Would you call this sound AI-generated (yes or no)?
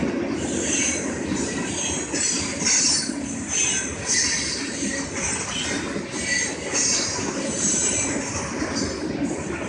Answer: no